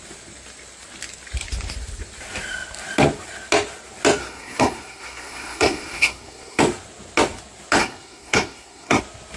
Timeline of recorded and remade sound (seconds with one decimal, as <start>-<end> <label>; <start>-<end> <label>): 0.0-4.2 recorded; 4.2-6.6 remade; 6.6-7.8 recorded; 7.8-9.0 remade; 9.0-9.4 recorded